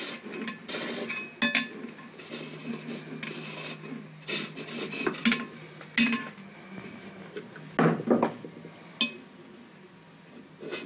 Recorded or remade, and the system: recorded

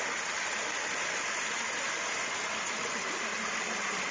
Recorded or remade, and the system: recorded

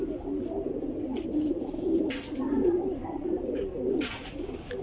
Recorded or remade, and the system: recorded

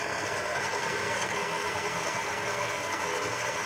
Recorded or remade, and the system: remade, codec, SNAC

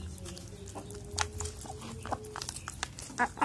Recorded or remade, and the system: recorded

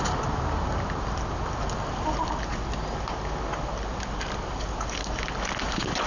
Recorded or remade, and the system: recorded